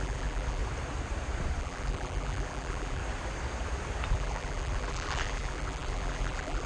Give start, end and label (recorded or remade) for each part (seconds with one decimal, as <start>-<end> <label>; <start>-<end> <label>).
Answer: 0.0-0.6 remade; 0.6-1.6 recorded; 1.6-3.0 remade; 3.0-4.1 recorded; 4.1-6.7 remade